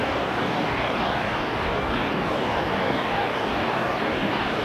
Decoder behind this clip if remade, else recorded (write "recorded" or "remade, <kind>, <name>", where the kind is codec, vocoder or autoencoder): remade, codec, DAC